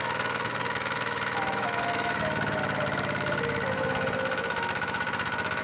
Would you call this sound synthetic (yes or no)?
yes